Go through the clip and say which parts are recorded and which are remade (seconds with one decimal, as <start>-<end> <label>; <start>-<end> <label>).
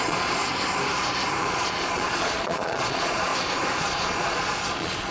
0.0-0.4 remade; 0.4-1.4 recorded; 1.4-3.3 remade; 3.3-3.8 recorded; 3.8-5.1 remade